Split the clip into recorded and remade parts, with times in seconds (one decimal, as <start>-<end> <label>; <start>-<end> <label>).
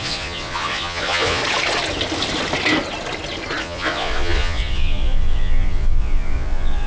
0.0-1.4 remade; 1.4-3.6 recorded; 3.6-6.9 remade